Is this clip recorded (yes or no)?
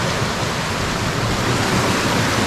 yes